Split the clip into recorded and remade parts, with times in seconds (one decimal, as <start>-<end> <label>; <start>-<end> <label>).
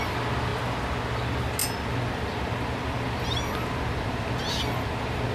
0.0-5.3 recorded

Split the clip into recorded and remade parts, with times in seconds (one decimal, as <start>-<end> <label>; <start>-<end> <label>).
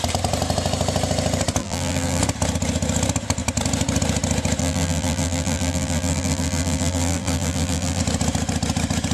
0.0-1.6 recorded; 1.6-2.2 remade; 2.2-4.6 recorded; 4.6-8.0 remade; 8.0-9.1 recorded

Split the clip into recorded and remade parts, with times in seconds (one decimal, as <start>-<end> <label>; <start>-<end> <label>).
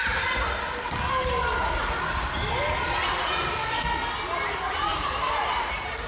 0.0-4.9 recorded; 4.9-6.1 remade